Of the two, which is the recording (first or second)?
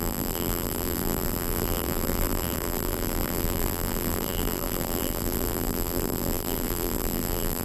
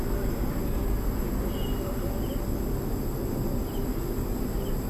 second